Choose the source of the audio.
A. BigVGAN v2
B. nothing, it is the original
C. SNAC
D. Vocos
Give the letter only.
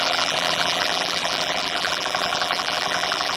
A